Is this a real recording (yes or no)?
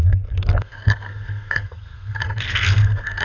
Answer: no